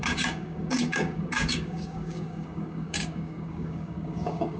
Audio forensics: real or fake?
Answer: fake